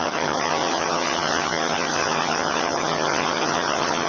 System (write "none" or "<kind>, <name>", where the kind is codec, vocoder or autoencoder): vocoder, HiFi-GAN